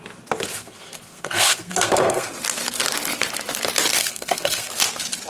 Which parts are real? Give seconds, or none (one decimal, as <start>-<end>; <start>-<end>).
0.0-0.5; 2.3-4.0; 4.7-5.3